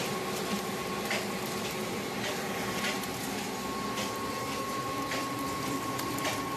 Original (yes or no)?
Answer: yes